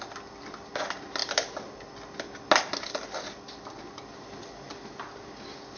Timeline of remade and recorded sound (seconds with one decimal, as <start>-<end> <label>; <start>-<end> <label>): 0.0-5.8 recorded